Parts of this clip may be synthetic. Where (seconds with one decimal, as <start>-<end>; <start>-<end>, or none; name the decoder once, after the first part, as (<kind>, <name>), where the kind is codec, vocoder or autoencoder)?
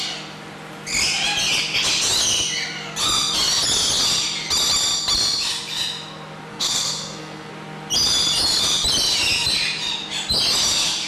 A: 6.5-7.5 (codec, SNAC)